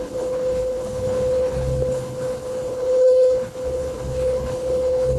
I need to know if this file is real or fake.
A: fake